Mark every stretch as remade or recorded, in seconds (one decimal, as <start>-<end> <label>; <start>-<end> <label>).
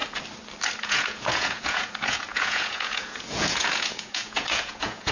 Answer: 0.0-0.8 recorded; 0.8-5.1 remade